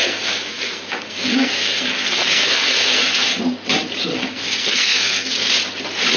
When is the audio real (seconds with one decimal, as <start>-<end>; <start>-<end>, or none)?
3.4-4.1; 5.5-6.2